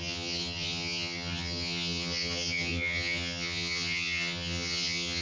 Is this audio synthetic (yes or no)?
yes